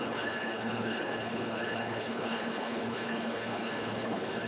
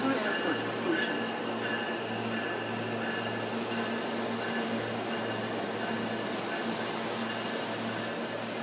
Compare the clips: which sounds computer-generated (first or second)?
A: first